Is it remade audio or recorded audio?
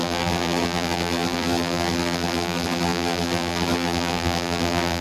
remade